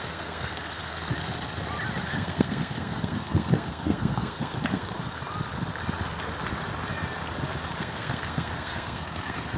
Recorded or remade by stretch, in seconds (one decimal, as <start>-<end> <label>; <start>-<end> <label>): 0.0-1.1 remade; 1.1-2.0 recorded; 2.0-5.0 remade; 5.0-7.8 recorded; 7.8-9.6 remade